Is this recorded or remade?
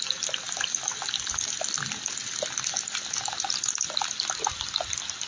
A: recorded